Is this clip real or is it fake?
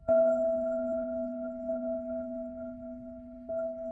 fake